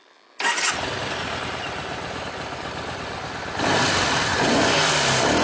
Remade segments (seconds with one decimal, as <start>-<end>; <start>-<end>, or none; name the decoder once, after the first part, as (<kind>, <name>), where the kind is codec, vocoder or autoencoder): 4.3-4.9 (vocoder, Vocos)